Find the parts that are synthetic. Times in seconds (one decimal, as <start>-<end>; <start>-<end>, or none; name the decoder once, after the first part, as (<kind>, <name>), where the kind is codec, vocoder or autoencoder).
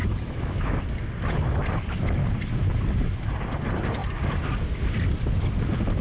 0.0-0.8 (autoencoder, DAC-VAE)